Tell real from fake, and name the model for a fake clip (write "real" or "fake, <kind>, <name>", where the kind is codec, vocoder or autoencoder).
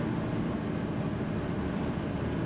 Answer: real